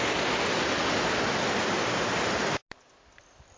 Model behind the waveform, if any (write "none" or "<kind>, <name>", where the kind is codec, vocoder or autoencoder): none